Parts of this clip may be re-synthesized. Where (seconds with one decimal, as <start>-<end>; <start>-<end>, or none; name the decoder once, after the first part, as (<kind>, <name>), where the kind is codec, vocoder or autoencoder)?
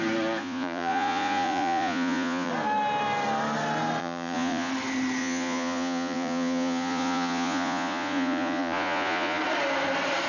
0.4-2.5 (vocoder, Vocos); 4.0-4.7; 5.2-9.4